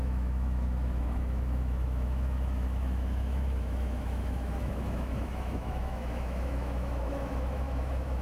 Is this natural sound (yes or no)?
no